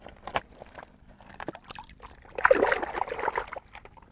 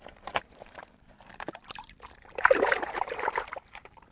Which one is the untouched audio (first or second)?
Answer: first